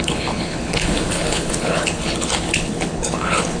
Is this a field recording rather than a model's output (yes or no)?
no